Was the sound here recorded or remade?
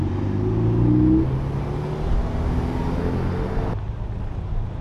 recorded